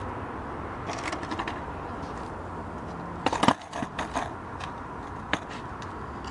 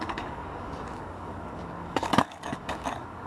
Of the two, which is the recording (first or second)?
first